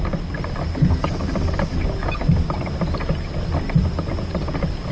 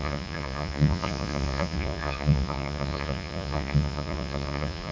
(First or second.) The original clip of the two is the first